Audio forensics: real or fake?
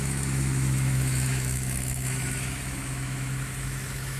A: fake